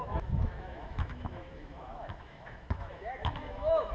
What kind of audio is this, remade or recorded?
remade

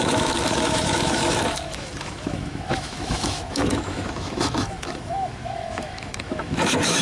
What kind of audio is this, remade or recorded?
remade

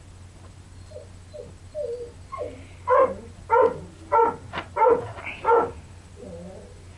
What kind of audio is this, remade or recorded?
recorded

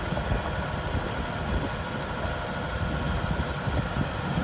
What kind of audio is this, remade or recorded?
recorded